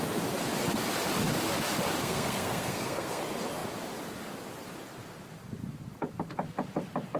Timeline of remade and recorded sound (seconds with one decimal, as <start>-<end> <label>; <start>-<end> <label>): 0.0-2.0 recorded; 2.0-3.2 remade; 3.2-7.2 recorded